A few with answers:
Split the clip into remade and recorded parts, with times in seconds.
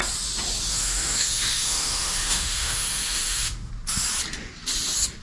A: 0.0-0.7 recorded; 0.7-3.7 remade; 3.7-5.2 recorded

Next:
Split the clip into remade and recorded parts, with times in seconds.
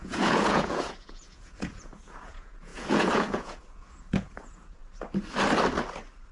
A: 0.0-4.8 remade; 4.8-6.3 recorded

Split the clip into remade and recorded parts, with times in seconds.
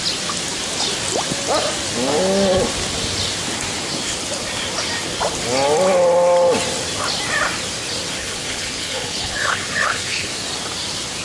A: 0.0-8.2 recorded; 8.2-10.3 remade; 10.3-11.2 recorded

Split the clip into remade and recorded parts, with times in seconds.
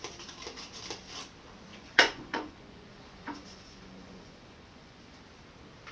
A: 0.0-1.7 recorded; 1.7-5.2 remade; 5.2-5.9 recorded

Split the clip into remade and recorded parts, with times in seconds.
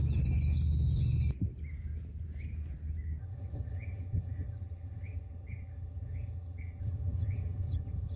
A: 0.0-3.2 recorded; 3.2-8.2 remade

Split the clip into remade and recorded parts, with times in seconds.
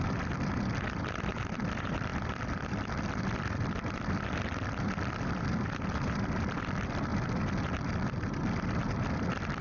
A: 0.0-7.1 remade; 7.1-8.7 recorded; 8.7-9.6 remade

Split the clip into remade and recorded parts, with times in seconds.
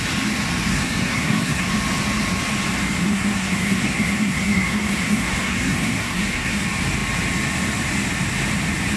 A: 0.0-0.7 recorded; 0.7-1.7 remade; 1.7-3.1 recorded; 3.1-6.6 remade; 6.6-9.0 recorded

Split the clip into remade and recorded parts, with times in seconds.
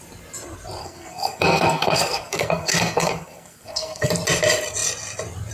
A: 0.0-0.8 recorded; 0.8-4.1 remade; 4.1-5.5 recorded